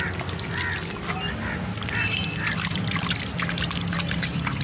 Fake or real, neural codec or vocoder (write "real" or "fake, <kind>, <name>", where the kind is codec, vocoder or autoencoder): real